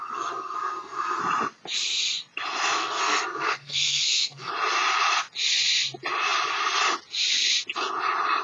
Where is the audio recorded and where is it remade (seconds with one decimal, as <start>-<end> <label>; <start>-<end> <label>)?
0.0-1.2 remade; 1.2-2.8 recorded; 2.8-4.5 remade; 4.5-8.4 recorded